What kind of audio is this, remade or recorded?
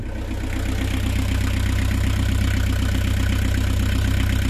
recorded